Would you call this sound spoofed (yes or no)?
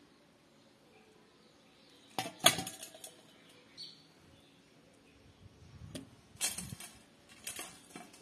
no